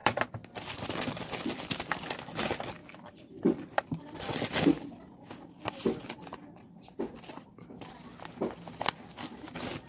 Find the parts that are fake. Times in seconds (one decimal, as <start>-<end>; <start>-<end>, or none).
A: 0.0-1.1; 2.8-4.4